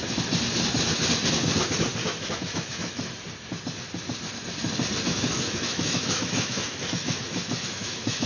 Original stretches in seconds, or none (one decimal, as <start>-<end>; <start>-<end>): 0.0-2.0; 3.1-5.1